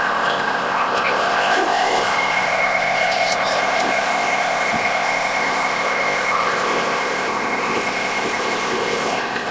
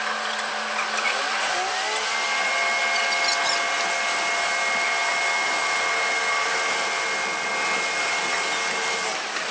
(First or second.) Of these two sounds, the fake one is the first